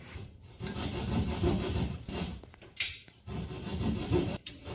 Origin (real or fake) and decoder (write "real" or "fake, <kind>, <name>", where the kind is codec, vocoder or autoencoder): fake, vocoder, BigVGAN v2